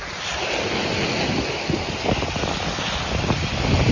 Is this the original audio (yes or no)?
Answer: yes